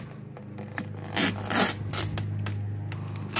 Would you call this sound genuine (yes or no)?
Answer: yes